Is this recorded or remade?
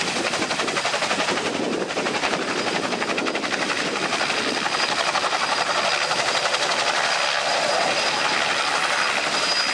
recorded